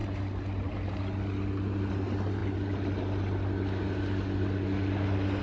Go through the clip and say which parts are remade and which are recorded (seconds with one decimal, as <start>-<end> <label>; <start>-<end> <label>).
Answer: 0.0-5.4 recorded